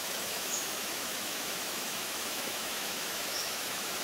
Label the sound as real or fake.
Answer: fake